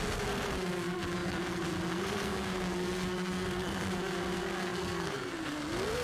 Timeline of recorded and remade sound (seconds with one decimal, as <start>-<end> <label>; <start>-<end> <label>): 0.0-6.0 remade